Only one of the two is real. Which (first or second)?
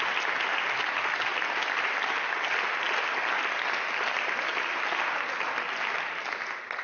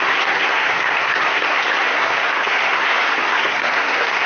first